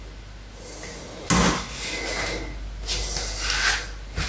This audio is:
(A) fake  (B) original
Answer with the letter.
B